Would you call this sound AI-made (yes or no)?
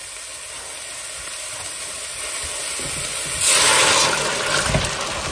no